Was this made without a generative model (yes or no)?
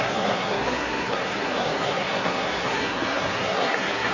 no